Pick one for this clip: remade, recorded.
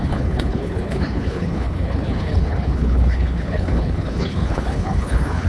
remade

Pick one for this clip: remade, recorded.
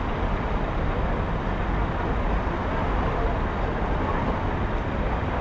recorded